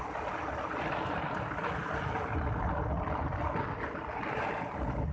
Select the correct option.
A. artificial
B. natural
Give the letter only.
B